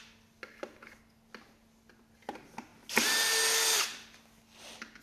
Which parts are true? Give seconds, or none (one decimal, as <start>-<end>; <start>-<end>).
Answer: 0.0-5.0